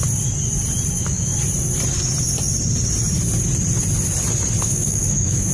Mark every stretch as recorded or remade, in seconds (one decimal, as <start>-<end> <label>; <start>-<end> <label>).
0.0-0.9 recorded; 0.9-1.3 remade; 1.3-4.6 recorded; 4.6-5.5 remade